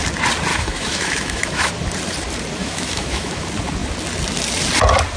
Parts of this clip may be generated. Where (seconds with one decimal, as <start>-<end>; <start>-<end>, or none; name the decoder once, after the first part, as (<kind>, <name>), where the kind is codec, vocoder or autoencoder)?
0.5-1.7 (autoencoder, DAC-VAE); 2.6-3.4